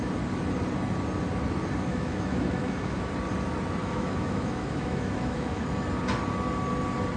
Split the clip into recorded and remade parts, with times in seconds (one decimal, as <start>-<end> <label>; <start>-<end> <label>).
0.0-1.9 recorded; 1.9-3.1 remade; 3.1-3.8 recorded; 3.8-5.6 remade; 5.6-7.2 recorded